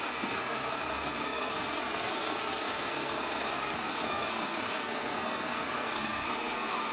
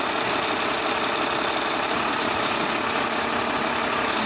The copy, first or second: first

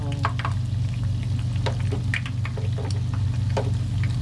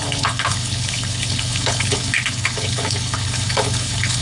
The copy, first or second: second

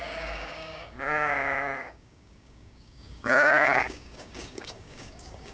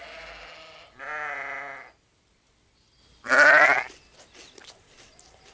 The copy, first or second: first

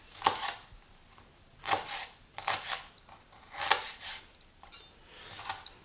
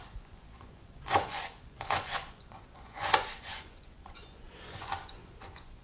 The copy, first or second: second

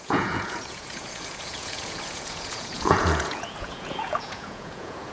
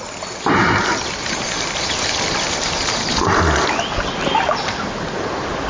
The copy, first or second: first